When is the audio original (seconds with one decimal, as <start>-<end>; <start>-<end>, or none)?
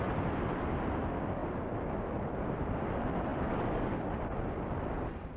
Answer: 0.0-5.4